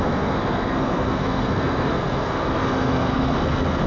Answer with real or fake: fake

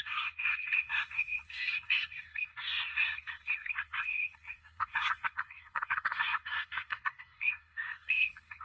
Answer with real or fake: fake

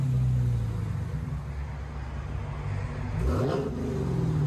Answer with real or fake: real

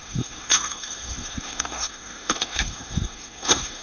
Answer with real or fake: fake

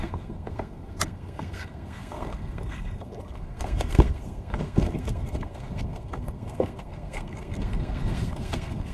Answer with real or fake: fake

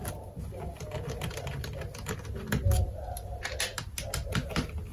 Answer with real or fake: real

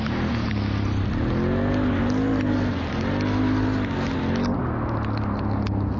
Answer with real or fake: real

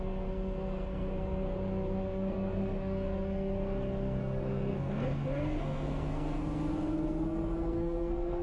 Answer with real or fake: fake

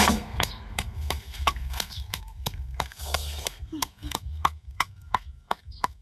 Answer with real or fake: fake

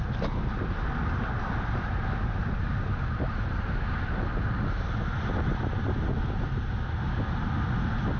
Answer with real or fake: real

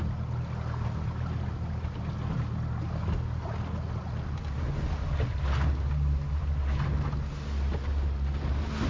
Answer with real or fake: real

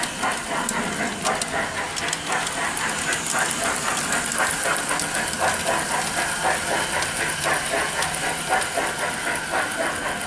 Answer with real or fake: real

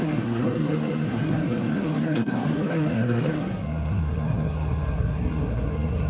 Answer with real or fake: fake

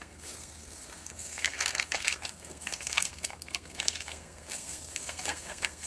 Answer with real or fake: fake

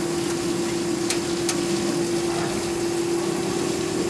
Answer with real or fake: real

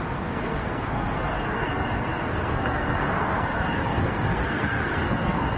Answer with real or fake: fake